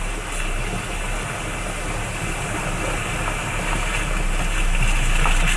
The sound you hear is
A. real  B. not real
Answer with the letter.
A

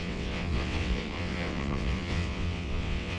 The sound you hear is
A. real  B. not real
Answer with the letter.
B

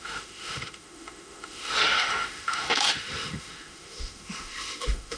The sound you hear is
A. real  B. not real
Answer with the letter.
B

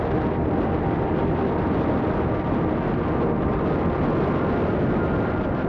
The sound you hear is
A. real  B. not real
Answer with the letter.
A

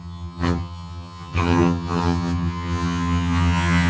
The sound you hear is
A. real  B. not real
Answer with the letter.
B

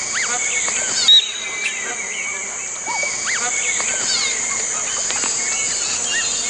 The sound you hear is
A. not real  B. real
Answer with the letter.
B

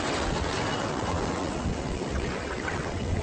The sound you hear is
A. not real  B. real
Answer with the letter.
A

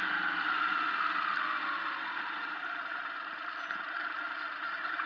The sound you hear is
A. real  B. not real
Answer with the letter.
A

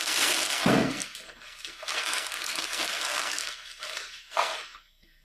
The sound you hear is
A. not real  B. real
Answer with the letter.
A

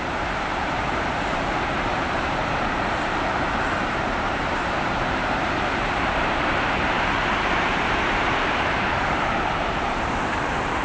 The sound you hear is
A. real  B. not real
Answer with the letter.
B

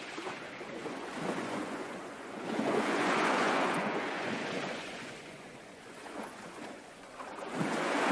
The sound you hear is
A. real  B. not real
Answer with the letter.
B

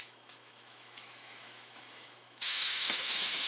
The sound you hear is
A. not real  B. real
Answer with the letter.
A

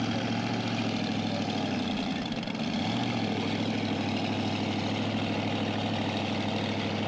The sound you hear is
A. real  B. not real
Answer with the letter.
B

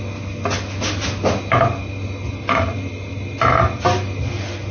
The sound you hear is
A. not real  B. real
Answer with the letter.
B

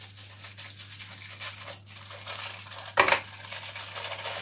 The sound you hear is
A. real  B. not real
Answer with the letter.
A